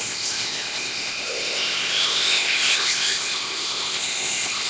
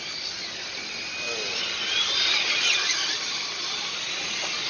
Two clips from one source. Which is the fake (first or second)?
first